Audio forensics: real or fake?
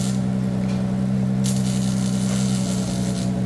real